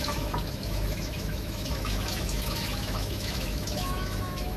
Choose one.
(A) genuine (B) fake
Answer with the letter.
B